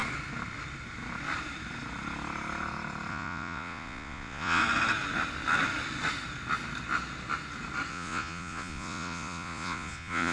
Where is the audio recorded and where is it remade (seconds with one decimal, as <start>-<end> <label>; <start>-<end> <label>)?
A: 0.0-3.1 recorded; 3.1-4.6 remade; 4.6-7.9 recorded; 7.9-10.3 remade